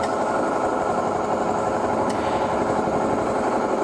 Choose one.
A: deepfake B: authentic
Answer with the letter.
B